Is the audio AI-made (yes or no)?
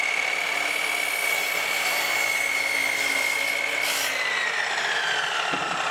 no